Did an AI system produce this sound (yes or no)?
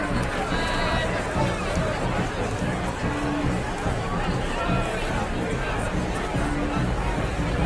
no